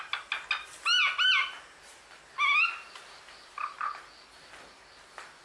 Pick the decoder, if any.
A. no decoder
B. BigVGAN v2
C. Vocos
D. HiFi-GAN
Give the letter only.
A